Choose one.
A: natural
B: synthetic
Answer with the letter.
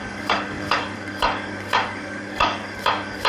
B